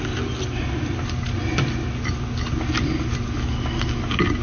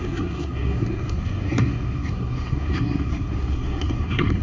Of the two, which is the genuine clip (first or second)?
first